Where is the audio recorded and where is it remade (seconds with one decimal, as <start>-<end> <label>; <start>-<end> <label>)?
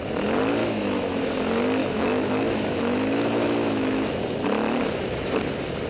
0.0-0.6 recorded; 0.6-1.2 remade; 1.2-1.8 recorded; 1.8-5.3 remade; 5.3-5.9 recorded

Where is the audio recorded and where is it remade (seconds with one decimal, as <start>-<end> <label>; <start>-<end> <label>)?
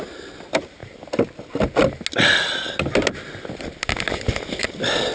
0.0-5.1 recorded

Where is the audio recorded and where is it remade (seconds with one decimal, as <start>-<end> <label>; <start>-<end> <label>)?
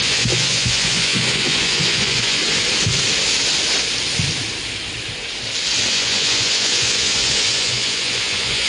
0.0-2.4 remade; 2.4-5.9 recorded; 5.9-8.7 remade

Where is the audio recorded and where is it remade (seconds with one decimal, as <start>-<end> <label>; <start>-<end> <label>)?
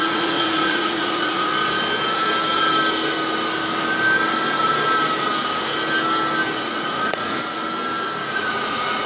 0.0-1.5 remade; 1.5-6.6 recorded; 6.6-7.6 remade; 7.6-8.3 recorded; 8.3-9.1 remade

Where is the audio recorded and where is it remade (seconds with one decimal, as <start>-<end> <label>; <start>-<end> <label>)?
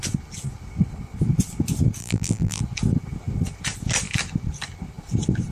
0.0-2.0 recorded; 2.0-2.6 remade; 2.6-5.5 recorded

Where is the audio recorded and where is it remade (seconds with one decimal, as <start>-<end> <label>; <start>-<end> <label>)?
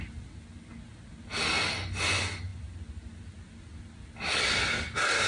0.0-5.3 recorded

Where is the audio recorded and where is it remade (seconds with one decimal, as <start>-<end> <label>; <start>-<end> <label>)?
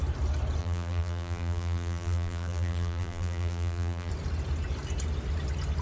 0.0-0.6 recorded; 0.6-4.1 remade; 4.1-5.8 recorded